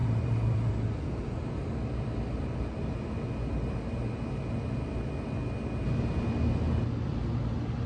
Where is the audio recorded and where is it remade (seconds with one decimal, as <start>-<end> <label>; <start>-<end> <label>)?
0.0-0.7 remade; 0.7-7.9 recorded